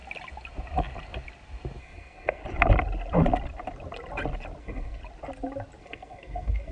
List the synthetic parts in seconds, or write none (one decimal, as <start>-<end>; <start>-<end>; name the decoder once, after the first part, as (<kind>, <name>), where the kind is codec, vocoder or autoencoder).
1.8-2.4 (codec, SNAC); 4.6-5.0; 5.8-6.7

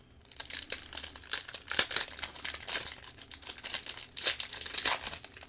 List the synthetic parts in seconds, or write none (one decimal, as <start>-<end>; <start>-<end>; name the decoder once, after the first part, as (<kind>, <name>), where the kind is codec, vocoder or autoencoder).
none